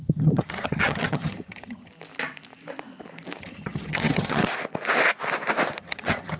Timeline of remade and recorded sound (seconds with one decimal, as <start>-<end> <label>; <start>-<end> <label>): 0.0-1.9 remade; 1.9-3.4 recorded; 3.4-4.4 remade; 4.4-5.8 recorded; 5.8-6.4 remade